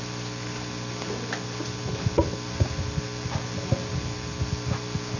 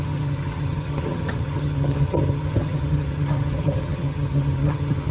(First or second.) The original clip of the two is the first